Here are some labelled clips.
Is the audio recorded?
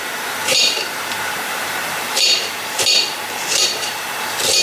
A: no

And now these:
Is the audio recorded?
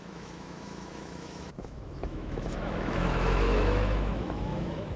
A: no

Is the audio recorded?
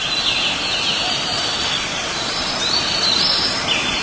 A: yes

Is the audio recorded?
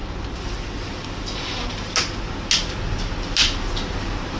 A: yes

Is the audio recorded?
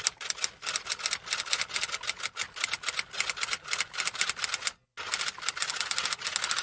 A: yes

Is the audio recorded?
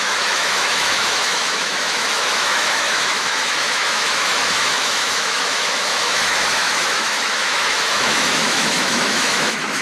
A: no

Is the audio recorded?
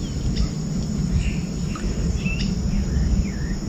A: yes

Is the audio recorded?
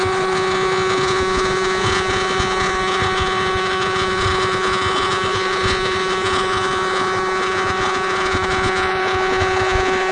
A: no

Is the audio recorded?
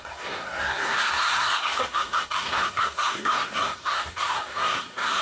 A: no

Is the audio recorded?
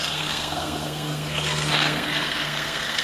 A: no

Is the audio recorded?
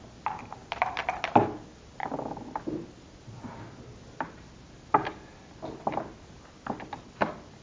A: yes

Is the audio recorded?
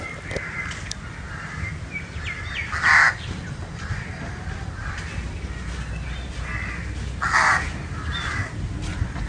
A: yes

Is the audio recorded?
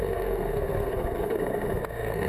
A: no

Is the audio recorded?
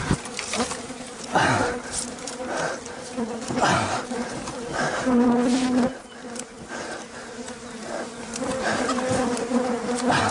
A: no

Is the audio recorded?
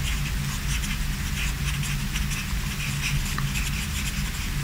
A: yes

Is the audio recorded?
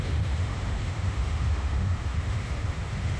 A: no